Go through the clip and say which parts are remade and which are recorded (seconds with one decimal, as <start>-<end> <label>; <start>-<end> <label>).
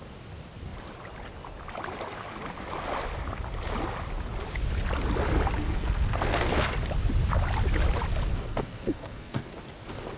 0.0-5.6 recorded; 5.6-6.7 remade; 6.7-8.3 recorded; 8.3-9.5 remade; 9.5-10.2 recorded